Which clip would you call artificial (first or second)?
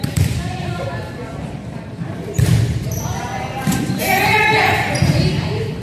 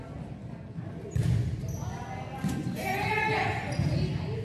first